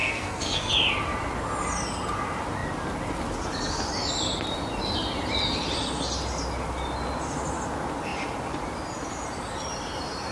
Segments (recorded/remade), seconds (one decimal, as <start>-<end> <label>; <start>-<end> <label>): 0.0-0.7 remade; 0.7-10.3 recorded